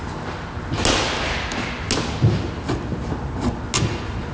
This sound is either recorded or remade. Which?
recorded